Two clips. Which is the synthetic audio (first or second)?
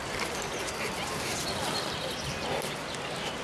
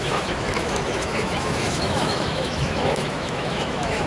second